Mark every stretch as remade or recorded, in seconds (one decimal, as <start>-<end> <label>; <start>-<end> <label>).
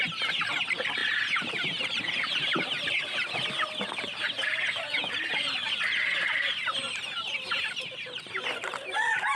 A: 0.0-9.4 recorded